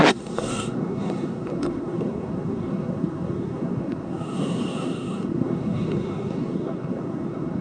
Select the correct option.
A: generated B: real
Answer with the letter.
A